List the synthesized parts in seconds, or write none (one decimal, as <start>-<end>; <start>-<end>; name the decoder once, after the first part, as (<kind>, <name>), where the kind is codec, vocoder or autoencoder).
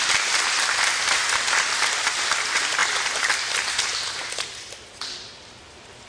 none